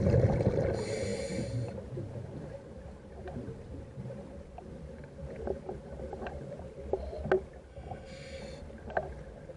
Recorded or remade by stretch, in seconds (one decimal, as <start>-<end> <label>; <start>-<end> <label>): 0.0-7.7 recorded; 7.7-8.4 remade; 8.4-9.6 recorded